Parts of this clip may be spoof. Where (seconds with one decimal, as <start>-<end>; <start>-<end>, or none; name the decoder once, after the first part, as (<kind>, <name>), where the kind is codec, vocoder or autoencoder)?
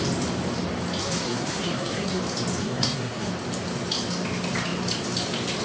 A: 1.0-2.2 (codec, SNAC); 2.6-3.3